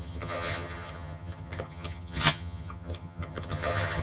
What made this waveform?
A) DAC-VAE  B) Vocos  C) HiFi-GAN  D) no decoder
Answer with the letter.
C